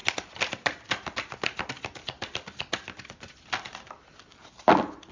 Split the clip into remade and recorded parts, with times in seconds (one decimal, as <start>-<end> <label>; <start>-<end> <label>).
0.0-5.1 recorded